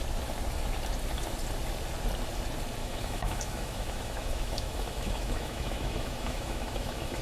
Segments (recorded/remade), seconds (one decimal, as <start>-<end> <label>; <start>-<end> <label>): 0.0-2.8 recorded; 2.8-7.2 remade